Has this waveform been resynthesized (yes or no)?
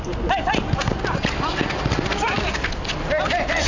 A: no